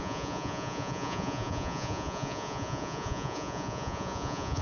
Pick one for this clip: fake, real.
fake